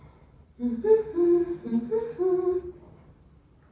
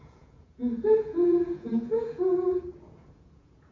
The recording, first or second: first